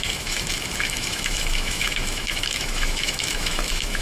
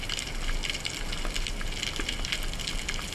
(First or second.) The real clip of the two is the second